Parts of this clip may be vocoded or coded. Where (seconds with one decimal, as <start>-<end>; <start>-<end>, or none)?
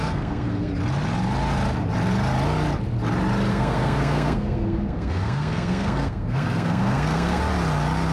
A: 0.0-0.7; 3.5-7.4